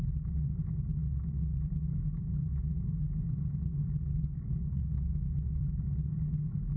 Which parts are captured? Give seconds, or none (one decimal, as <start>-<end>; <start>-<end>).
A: 0.0-6.8